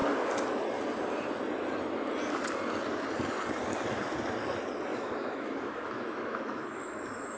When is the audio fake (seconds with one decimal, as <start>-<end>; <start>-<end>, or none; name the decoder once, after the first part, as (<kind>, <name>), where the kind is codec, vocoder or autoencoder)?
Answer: 4.9-7.4 (autoencoder, DAC-VAE)